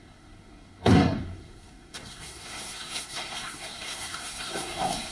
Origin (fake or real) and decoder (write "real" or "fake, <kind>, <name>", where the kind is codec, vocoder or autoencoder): fake, codec, SNAC